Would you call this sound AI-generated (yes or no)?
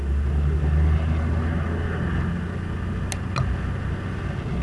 no